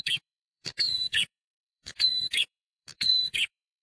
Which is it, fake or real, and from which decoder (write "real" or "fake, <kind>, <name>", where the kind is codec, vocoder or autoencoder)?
fake, codec, SNAC